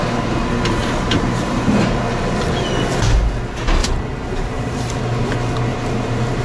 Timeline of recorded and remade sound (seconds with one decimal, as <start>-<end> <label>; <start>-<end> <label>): 0.0-0.8 recorded; 0.8-2.0 remade; 2.0-3.8 recorded; 3.8-5.0 remade; 5.0-5.7 recorded; 5.7-6.4 remade